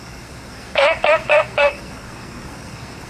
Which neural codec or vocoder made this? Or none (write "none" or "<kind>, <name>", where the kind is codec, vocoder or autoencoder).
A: codec, SNAC